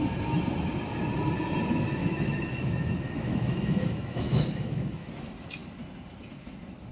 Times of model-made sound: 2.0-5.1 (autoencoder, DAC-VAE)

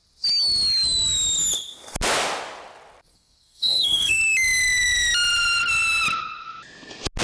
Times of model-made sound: 3.1-4.2 (codec, SNAC)